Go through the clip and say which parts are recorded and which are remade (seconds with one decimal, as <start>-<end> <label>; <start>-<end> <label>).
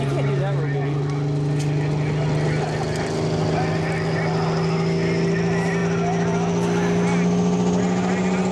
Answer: 0.0-8.5 recorded